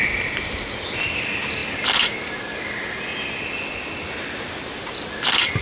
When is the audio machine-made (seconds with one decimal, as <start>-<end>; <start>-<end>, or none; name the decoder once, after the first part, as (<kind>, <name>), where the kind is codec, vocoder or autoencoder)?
none